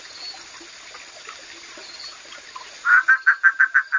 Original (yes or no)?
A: yes